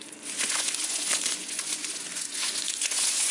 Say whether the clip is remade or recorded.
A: remade